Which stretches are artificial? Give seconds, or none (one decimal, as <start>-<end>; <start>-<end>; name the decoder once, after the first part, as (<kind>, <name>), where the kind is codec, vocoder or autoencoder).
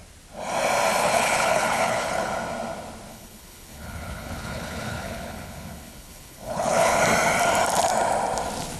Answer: 1.0-2.3 (codec, HILCodec); 3.1-7.0